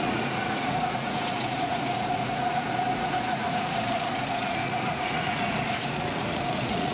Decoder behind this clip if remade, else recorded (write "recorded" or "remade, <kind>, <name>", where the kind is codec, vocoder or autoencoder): remade, vocoder, Vocos